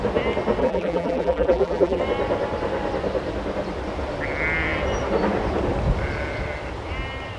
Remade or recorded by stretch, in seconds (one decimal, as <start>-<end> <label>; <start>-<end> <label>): 0.0-0.6 recorded; 0.6-2.0 remade; 2.0-7.4 recorded